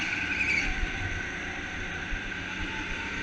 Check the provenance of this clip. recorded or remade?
recorded